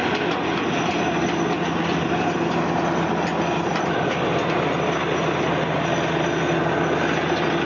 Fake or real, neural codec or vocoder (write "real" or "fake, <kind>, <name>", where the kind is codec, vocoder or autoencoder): real